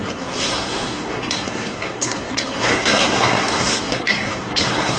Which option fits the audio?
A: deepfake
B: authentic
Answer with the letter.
A